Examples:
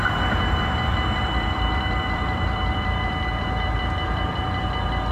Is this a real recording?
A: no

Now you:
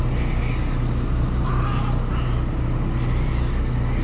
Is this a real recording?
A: yes